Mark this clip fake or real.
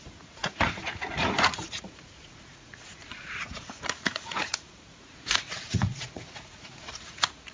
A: fake